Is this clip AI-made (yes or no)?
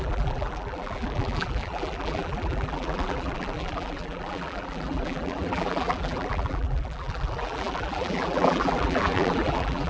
yes